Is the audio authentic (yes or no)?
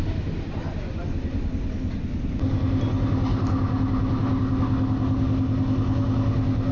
yes